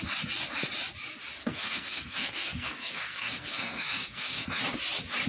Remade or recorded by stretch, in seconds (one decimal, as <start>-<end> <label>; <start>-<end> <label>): 0.0-1.4 recorded; 1.4-4.6 remade; 4.6-5.3 recorded